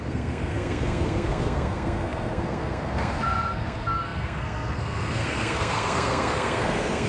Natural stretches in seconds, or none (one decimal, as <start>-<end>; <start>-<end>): none